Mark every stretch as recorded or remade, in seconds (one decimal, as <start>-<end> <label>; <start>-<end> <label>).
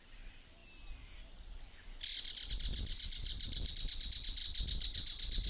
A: 0.0-3.2 recorded; 3.2-3.7 remade; 3.7-5.5 recorded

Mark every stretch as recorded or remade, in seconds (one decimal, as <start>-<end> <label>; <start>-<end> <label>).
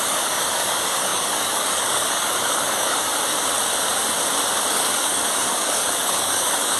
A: 0.0-3.1 remade; 3.1-4.7 recorded; 4.7-6.8 remade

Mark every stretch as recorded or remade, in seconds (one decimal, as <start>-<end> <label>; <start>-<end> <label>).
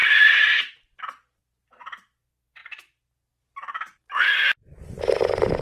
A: 0.0-1.0 remade; 1.0-5.6 recorded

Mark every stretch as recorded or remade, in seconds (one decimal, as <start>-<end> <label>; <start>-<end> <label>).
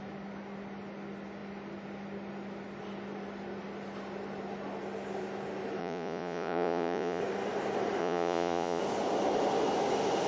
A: 0.0-5.8 recorded; 5.8-7.2 remade; 7.2-8.0 recorded; 8.0-8.8 remade; 8.8-10.3 recorded